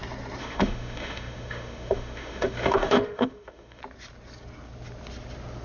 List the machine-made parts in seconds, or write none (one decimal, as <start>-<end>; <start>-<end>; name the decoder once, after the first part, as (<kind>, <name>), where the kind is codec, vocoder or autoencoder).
0.4-3.8 (autoencoder, DAC-VAE)